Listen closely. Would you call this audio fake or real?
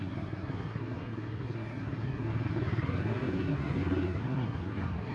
fake